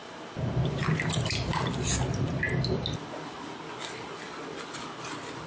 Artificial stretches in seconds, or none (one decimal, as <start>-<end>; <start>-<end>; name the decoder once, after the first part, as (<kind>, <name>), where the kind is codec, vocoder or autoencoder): none